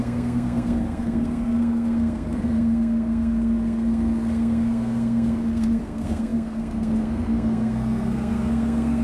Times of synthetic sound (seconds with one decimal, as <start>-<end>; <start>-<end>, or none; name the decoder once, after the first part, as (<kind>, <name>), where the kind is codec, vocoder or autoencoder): 0.0-9.0 (codec, SNAC)